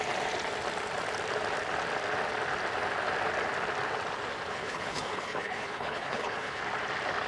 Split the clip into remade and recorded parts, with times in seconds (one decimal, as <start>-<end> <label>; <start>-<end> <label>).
0.0-4.5 recorded; 4.5-6.6 remade; 6.6-7.3 recorded